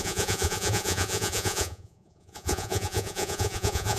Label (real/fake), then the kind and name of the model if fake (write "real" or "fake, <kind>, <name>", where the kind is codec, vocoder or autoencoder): fake, vocoder, Vocos